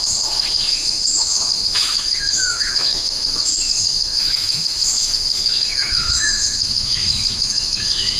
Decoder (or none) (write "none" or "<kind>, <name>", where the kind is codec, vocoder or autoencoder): autoencoder, DAC-VAE